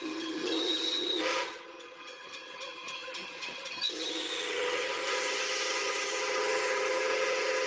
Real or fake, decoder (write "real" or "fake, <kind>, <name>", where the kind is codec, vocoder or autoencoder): fake, vocoder, HiFi-GAN